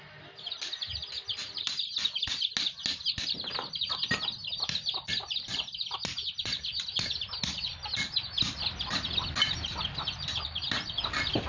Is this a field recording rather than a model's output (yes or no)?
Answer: yes